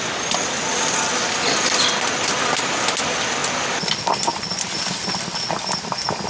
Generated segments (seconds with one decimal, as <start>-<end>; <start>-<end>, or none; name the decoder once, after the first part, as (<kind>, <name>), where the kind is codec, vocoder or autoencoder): none